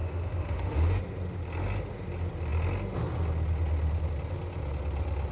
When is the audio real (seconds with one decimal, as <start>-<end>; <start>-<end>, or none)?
1.0-5.3